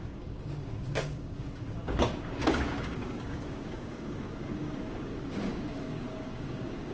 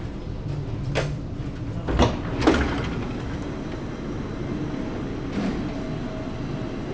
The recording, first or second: second